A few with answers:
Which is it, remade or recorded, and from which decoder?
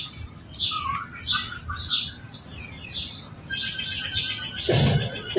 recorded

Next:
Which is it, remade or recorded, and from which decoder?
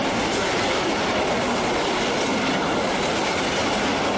recorded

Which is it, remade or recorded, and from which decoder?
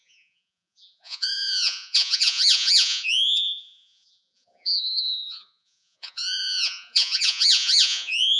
remade, vocoder, Vocos